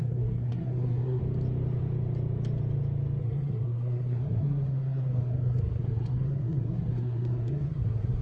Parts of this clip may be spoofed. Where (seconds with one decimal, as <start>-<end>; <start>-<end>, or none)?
0.0-1.2; 3.2-8.2